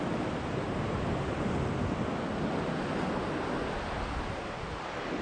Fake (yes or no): no